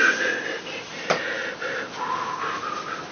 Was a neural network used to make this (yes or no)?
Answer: no